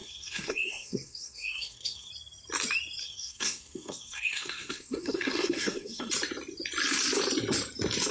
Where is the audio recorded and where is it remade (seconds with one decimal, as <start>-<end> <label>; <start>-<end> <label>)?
0.0-2.1 remade; 2.1-3.0 recorded; 3.0-6.1 remade; 6.1-8.1 recorded

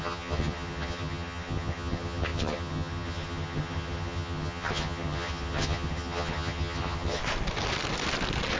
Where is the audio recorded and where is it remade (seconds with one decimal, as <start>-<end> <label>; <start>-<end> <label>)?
0.0-7.2 remade; 7.2-8.6 recorded